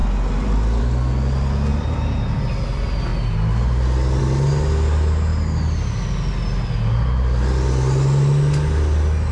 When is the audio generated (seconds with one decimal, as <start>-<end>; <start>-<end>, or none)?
1.7-2.4

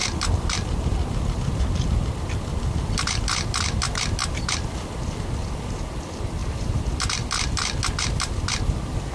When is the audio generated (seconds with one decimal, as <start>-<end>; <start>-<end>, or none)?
4.2-5.8; 6.4-7.6

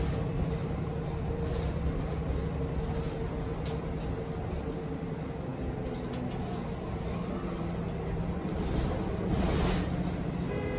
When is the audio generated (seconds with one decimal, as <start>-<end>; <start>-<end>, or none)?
none

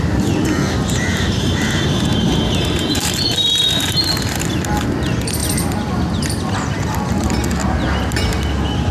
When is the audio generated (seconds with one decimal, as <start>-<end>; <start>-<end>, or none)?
1.1-3.9; 5.4-5.9

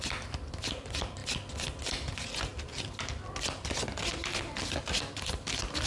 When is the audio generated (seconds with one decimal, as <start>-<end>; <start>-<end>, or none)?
none